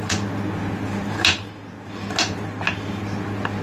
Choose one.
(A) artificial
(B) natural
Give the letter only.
B